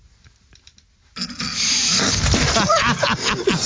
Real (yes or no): yes